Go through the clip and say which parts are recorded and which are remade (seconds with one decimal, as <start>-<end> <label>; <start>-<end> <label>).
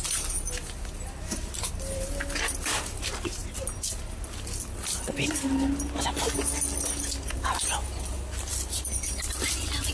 0.0-9.9 recorded